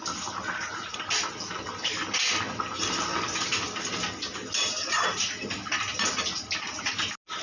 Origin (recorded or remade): recorded